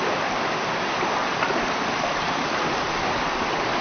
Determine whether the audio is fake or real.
real